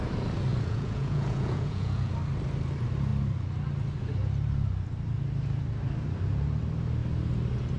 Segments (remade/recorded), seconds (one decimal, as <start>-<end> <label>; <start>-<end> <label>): 0.0-0.5 recorded; 0.5-2.1 remade; 2.1-7.8 recorded